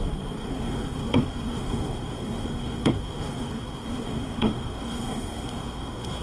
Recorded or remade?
remade